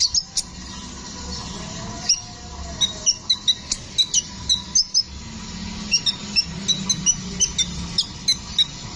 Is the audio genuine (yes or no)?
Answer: yes